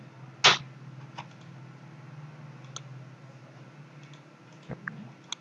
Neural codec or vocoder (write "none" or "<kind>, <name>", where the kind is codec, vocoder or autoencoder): none